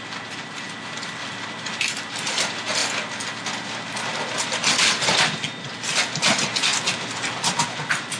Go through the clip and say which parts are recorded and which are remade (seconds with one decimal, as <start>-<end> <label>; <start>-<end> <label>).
0.0-1.2 recorded; 1.2-1.8 remade; 1.8-8.2 recorded